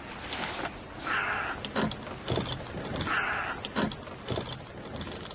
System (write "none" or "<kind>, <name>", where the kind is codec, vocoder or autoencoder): none